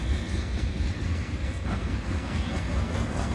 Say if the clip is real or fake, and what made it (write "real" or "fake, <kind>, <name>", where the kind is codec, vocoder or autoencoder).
fake, codec, SNAC